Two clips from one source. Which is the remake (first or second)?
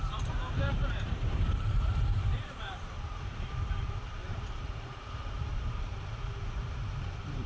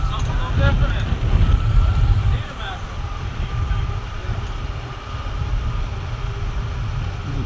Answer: first